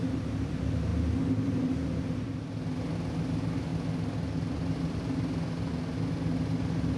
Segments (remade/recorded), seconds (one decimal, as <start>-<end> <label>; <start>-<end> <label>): 0.0-7.0 recorded